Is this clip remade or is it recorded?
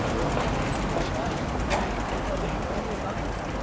recorded